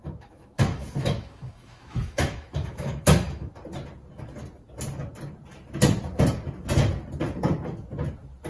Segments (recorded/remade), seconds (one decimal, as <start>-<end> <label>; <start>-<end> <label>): 0.0-3.5 remade; 3.5-8.5 recorded